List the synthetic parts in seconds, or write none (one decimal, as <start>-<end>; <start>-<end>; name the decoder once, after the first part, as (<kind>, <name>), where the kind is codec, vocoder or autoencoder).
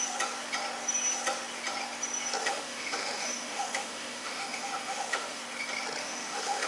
2.4-5.4 (autoencoder, DAC-VAE); 6.0-6.7